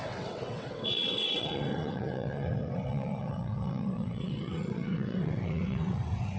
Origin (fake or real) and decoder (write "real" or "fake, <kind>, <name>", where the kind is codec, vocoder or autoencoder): fake, vocoder, WaveNeXt